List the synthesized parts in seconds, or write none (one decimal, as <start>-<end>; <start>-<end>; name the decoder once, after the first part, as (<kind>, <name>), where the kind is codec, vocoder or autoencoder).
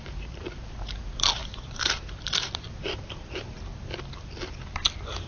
0.0-3.7 (vocoder, BigVGAN v2)